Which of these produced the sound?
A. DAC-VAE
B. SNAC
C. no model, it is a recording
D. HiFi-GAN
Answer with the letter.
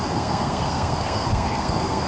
B